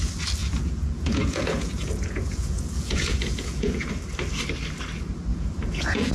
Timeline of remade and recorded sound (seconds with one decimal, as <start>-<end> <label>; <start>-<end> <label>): 0.0-0.4 recorded; 0.4-3.9 remade; 3.9-5.3 recorded; 5.3-6.1 remade